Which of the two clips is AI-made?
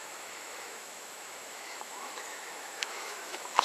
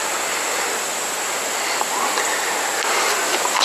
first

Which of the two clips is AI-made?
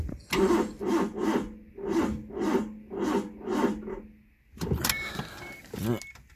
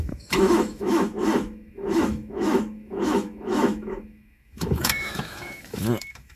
second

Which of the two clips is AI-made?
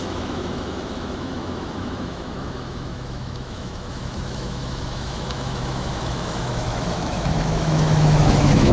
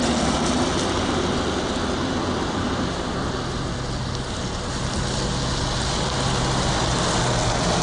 first